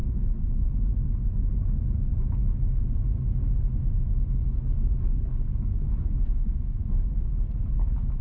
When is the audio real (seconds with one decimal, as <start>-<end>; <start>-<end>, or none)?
0.0-8.2